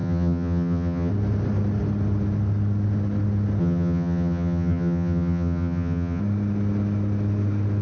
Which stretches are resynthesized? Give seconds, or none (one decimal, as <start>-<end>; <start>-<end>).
0.0-1.1; 3.6-6.2